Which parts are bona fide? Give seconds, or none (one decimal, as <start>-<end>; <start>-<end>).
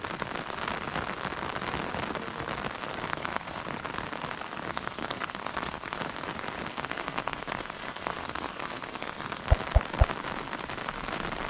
0.0-3.1; 3.6-4.7; 6.0-6.7; 9.4-11.5